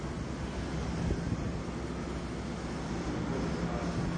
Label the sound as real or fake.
real